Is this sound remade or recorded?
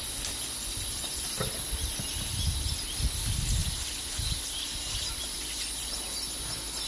recorded